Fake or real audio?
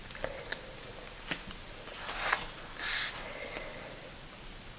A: real